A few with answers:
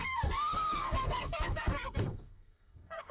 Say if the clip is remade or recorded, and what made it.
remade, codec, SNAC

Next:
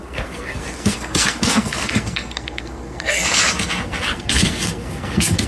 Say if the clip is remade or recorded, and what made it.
remade, codec, SNAC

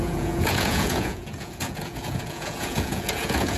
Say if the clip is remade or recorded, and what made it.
remade, vocoder, Vocos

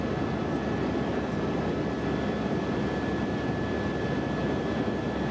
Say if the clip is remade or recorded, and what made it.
recorded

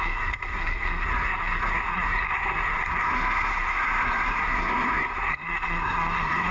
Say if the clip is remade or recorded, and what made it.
remade, codec, SNAC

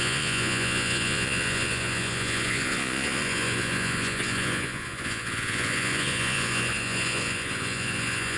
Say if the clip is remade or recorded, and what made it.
remade, vocoder, Vocos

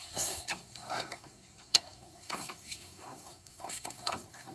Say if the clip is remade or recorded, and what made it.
remade, codec, SNAC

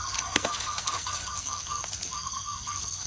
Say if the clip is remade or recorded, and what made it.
remade, codec, SNAC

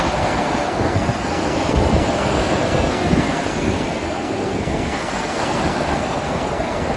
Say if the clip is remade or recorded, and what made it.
remade, codec, SNAC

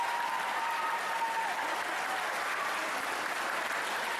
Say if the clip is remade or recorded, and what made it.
recorded